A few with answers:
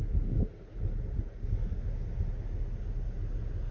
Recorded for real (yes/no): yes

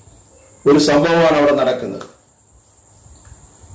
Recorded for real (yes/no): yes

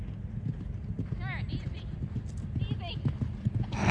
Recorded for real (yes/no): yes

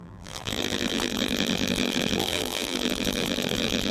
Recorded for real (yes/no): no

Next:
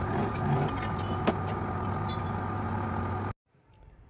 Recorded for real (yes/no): yes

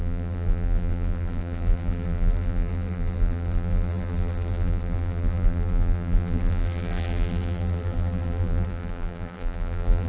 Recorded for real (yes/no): no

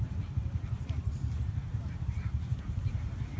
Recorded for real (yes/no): no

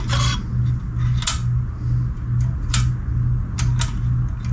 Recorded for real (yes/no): yes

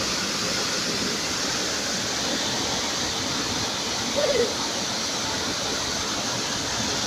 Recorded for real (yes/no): yes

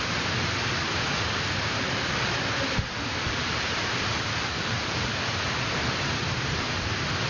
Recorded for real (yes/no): no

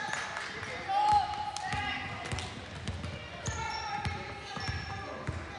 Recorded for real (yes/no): yes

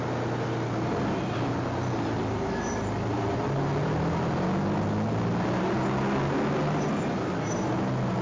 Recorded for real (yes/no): yes